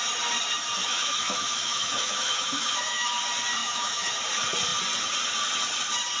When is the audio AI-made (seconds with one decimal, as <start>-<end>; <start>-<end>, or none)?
0.8-3.2; 3.6-4.1